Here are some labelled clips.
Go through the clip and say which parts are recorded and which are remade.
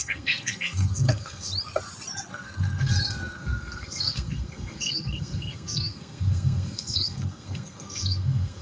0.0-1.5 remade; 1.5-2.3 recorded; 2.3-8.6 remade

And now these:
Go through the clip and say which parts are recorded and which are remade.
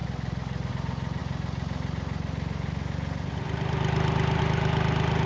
0.0-5.3 recorded